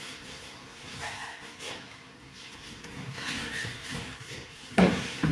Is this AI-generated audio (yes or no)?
yes